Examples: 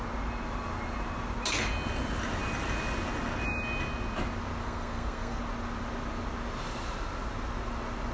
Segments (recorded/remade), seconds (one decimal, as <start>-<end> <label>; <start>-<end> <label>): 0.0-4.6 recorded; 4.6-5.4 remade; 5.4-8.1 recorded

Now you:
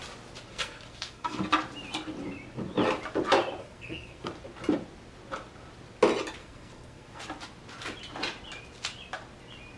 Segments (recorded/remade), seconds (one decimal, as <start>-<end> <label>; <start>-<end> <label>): 0.0-0.5 recorded; 0.5-1.4 remade; 1.4-3.6 recorded; 3.6-4.3 remade; 4.3-6.4 recorded; 6.4-7.2 remade; 7.2-9.8 recorded

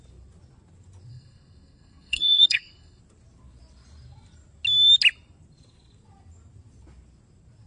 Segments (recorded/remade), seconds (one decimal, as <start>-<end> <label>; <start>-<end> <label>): 0.0-1.1 recorded; 1.1-3.0 remade; 3.0-7.7 recorded